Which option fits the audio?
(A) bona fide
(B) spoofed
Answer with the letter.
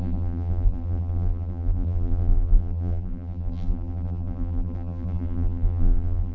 B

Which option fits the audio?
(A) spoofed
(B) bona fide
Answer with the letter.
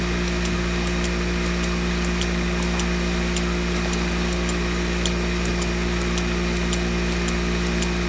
B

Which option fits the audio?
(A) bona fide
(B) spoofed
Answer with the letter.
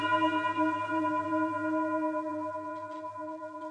B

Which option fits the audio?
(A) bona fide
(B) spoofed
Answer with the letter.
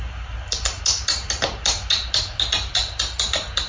A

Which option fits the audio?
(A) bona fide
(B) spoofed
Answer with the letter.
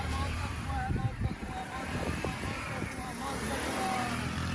B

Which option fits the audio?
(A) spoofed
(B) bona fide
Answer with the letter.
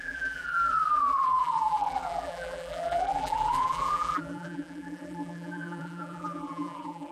A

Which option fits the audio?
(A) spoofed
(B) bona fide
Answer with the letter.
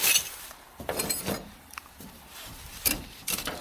A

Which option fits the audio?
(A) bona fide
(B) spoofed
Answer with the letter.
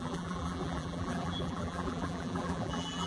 B